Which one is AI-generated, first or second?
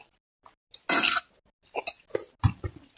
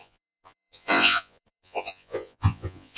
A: second